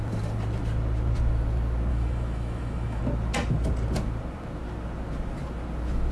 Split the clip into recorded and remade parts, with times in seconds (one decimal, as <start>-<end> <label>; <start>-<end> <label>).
0.0-1.9 recorded; 1.9-3.0 remade; 3.0-6.1 recorded